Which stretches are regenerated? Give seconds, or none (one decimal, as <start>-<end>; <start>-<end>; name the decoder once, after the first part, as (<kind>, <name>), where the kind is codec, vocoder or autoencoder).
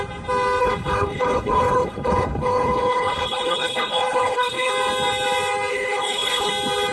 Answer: 0.6-4.7 (codec, HILCodec); 5.7-6.5